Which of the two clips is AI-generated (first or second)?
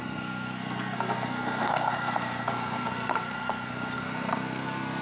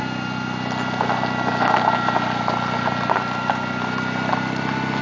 first